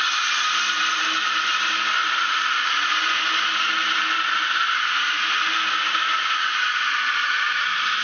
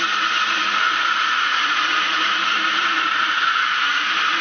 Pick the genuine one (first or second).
first